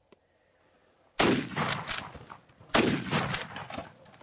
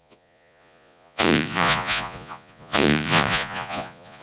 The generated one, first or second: second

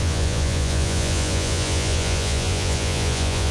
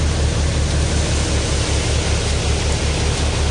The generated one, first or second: first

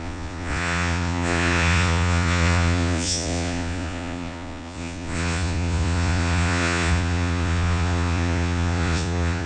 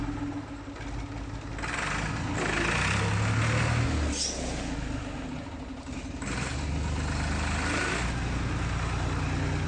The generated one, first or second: first